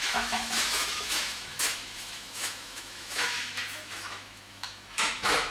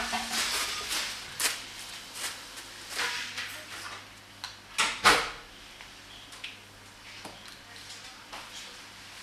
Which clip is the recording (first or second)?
second